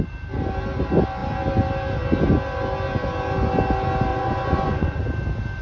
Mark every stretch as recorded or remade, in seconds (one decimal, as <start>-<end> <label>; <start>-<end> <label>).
0.0-4.1 recorded; 4.1-5.0 remade; 5.0-5.6 recorded